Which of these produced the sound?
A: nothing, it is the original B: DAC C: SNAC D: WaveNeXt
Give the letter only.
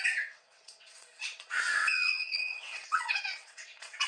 D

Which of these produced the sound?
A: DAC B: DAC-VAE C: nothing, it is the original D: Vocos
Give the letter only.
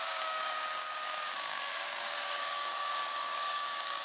A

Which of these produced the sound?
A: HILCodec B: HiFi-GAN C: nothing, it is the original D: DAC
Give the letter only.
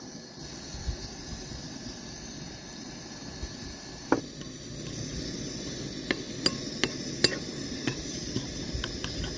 C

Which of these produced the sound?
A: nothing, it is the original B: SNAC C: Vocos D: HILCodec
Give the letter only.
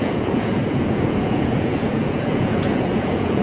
C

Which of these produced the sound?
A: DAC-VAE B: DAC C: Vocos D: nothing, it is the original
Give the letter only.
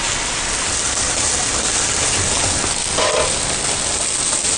D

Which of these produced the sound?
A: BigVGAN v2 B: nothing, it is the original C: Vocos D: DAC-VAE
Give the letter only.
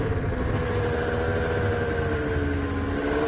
B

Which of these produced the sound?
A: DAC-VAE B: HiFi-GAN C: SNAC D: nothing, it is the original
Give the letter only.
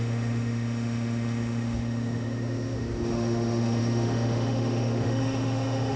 A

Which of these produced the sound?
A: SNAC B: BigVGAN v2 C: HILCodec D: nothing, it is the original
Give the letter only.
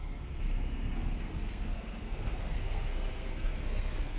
A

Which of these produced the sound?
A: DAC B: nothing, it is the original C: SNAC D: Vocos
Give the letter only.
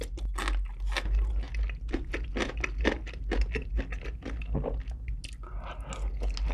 B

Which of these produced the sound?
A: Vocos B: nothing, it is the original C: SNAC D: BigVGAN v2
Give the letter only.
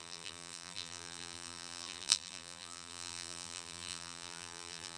D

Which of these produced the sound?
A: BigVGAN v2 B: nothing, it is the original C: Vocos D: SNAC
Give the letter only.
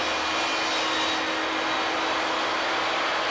B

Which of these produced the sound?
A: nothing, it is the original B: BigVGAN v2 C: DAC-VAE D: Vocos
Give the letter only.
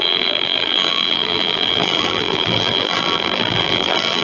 B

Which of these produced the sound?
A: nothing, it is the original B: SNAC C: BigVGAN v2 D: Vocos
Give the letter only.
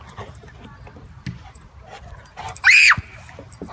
A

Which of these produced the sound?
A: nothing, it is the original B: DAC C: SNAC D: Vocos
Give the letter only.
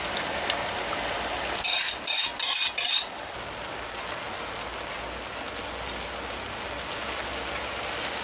A